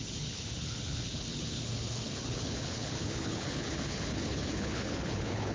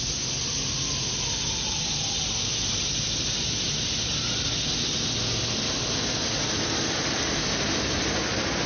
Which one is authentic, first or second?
second